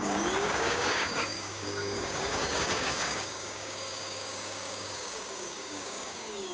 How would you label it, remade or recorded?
remade